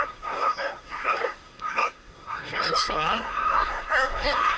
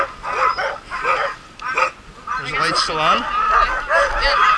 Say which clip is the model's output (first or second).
first